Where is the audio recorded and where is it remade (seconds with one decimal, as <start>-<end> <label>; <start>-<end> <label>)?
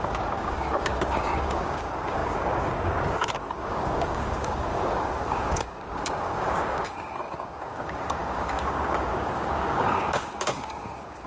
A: 0.0-11.3 remade